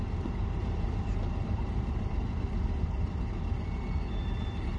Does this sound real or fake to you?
fake